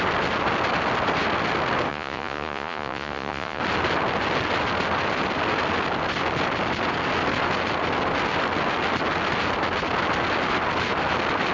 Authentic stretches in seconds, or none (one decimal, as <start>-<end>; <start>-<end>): 0.0-1.9; 3.6-11.5